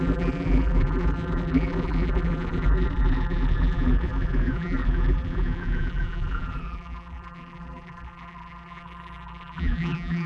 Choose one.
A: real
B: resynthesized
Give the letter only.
B